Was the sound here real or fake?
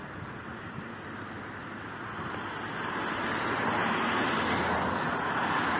real